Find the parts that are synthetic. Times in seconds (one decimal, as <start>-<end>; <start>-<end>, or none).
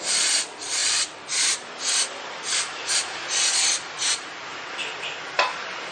0.0-5.9